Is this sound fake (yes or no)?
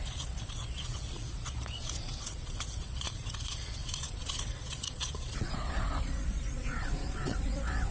yes